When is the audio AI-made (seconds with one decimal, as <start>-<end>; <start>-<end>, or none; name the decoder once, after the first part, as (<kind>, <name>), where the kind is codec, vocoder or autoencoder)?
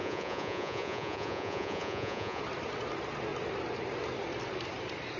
0.0-2.4 (vocoder, Vocos)